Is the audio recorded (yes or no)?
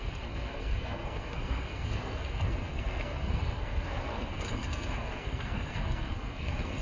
no